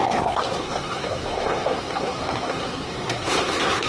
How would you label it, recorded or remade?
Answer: remade